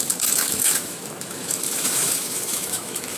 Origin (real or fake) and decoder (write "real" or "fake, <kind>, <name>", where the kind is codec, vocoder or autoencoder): fake, autoencoder, DAC-VAE